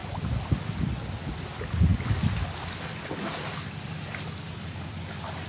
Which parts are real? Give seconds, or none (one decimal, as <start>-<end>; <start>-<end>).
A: 0.0-5.5